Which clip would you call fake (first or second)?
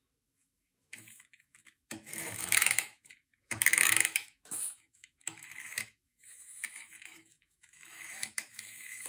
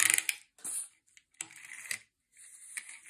first